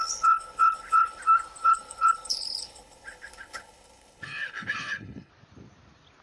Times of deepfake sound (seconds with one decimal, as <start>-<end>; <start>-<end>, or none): 0.0-1.2; 1.6-5.3